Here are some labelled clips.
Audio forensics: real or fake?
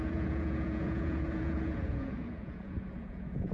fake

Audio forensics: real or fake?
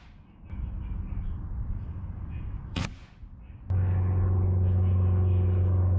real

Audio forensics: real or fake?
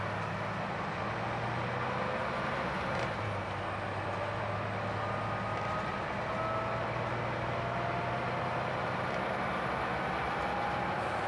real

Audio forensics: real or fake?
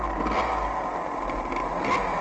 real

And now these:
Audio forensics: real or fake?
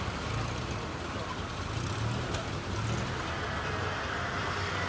real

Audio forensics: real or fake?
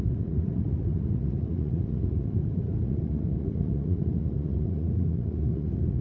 fake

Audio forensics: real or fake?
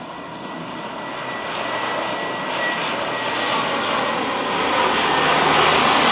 real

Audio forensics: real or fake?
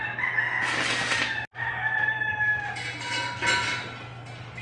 real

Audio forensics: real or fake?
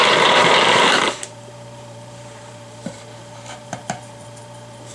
fake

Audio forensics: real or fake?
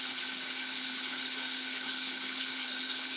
fake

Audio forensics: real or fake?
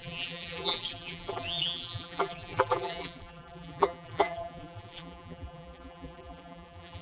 fake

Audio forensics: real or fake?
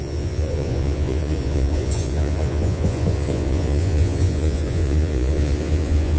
fake